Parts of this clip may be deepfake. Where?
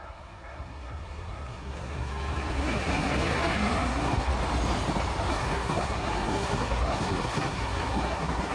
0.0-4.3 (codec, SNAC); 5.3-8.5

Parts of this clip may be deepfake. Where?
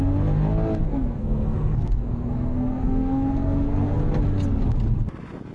0.8-4.0 (codec, SNAC)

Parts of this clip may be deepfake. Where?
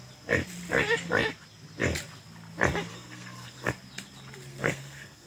2.9-3.7 (codec, SNAC); 4.5-5.3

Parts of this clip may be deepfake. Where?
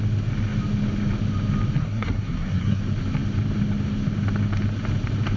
1.8-2.8 (codec, SNAC)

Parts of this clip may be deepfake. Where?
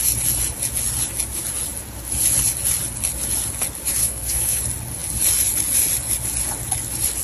4.0-4.6 (codec, SNAC)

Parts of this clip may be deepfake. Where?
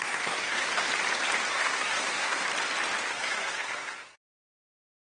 0.0-0.9 (codec, SNAC); 1.5-2.4; 3.1-5.1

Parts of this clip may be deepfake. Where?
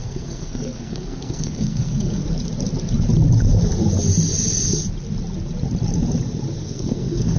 0.0-2.2 (codec, SNAC); 6.6-7.4